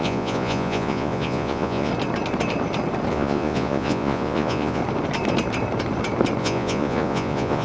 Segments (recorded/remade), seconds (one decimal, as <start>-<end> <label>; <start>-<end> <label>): 0.0-1.9 remade; 1.9-3.1 recorded; 3.1-4.8 remade; 4.8-6.4 recorded; 6.4-7.6 remade